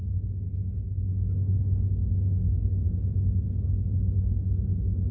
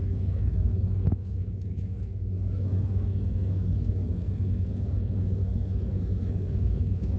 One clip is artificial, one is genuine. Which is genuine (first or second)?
first